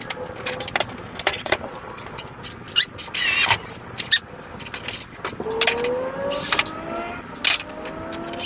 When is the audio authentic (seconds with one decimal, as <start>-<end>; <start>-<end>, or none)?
0.0-1.3; 2.4-8.5